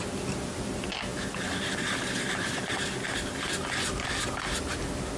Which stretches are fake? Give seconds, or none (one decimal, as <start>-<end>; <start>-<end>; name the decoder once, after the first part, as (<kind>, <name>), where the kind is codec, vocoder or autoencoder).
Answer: none